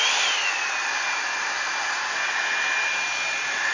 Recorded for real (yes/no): yes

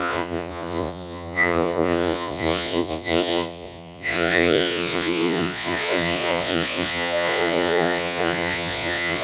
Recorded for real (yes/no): no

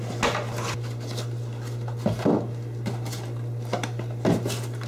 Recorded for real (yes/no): yes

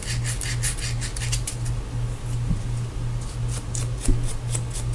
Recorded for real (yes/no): yes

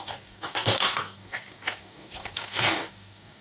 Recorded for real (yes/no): no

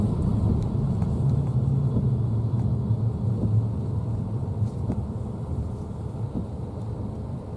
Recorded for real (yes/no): yes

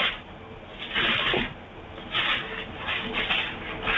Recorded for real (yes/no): yes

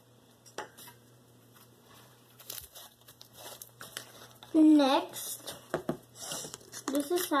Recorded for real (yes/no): no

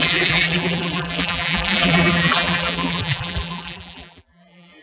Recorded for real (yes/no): no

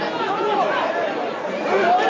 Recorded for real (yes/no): yes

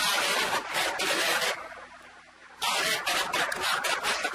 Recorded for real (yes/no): no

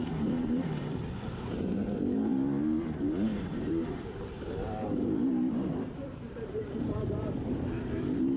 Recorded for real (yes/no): no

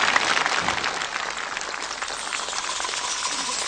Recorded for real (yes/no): yes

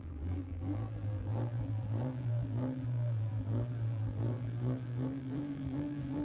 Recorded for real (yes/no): no